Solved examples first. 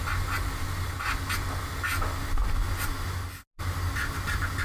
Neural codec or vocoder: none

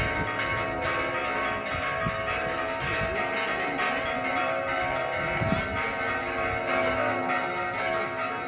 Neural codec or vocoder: none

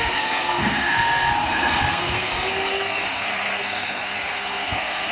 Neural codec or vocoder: codec, SNAC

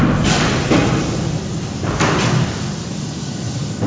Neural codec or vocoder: none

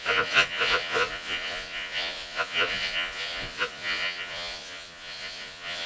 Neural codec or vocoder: vocoder, Vocos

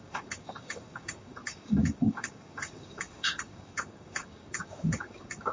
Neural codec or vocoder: codec, DAC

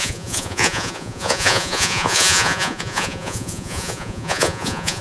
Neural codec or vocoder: vocoder, Vocos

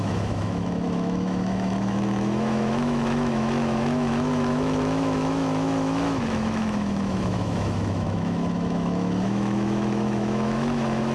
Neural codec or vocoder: autoencoder, DAC-VAE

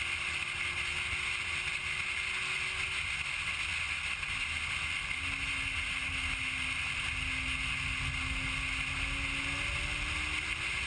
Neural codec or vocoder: none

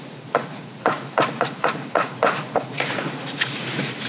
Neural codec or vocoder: vocoder, Vocos